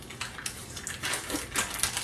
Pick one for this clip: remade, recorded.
recorded